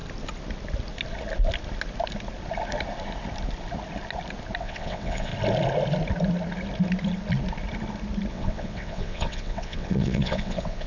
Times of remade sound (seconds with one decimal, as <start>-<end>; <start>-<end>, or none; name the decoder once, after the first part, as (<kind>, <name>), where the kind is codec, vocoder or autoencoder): 4.6-5.3 (vocoder, WaveNeXt); 8.3-10.9